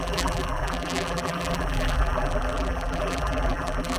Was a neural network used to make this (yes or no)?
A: yes